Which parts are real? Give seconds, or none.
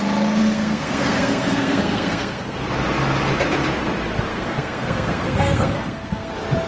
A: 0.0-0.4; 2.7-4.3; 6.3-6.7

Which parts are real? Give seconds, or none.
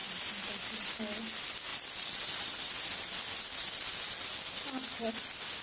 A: 0.0-5.6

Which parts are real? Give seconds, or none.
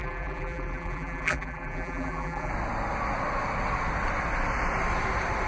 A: 2.5-5.5